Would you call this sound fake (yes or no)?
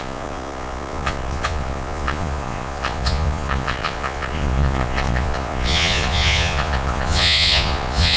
yes